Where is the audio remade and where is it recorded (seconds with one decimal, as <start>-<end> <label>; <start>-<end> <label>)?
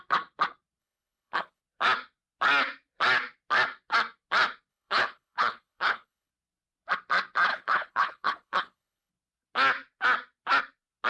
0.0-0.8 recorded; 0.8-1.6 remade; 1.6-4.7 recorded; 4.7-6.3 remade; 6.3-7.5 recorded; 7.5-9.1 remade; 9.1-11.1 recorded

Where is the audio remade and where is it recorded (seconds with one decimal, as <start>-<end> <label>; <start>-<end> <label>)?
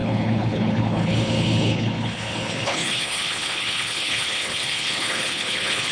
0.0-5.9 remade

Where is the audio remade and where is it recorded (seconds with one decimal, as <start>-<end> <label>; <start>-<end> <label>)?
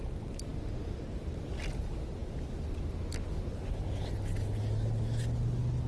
0.0-5.9 recorded